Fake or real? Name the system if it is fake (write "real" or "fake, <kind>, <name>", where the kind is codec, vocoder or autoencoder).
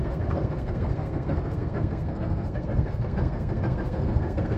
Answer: fake, codec, SNAC